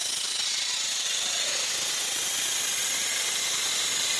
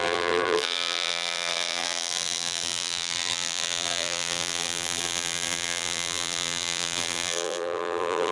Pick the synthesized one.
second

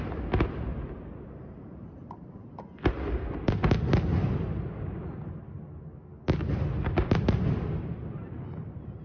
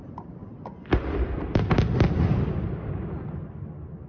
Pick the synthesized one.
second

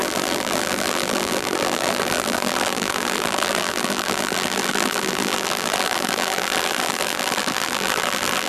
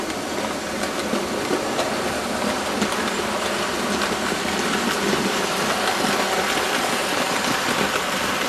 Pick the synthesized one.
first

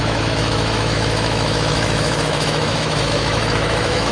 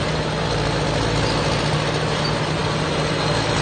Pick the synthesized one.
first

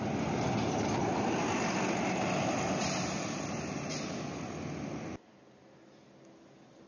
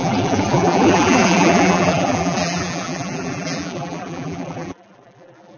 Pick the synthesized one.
second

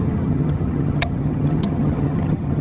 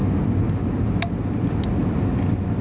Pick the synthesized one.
first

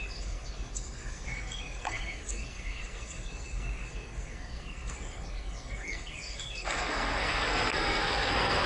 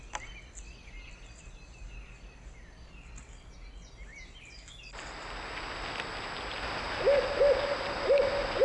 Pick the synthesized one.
first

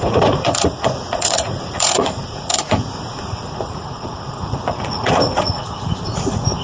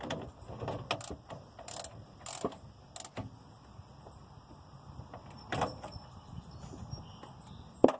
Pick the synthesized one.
first